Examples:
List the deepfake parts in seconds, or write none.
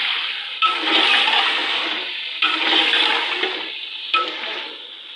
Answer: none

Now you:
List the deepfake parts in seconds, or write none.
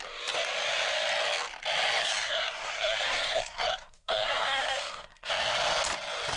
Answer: 2.0-5.3 (codec, SNAC)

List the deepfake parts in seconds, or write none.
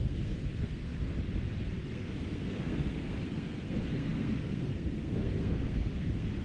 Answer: 0.0-0.9 (codec, SNAC); 1.6-6.4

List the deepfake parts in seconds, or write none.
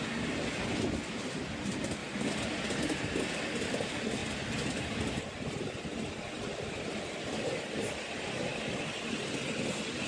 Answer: none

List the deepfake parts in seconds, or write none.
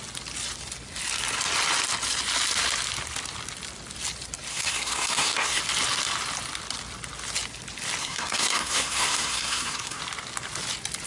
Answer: 4.5-5.6 (codec, SNAC); 8.0-10.0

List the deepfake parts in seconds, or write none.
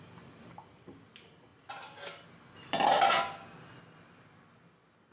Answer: none